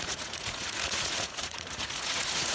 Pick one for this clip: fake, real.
fake